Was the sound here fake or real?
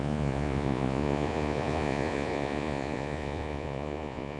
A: fake